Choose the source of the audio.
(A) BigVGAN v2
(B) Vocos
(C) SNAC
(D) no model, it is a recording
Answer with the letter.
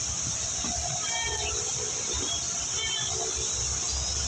D